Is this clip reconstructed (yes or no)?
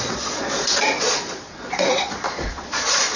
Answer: yes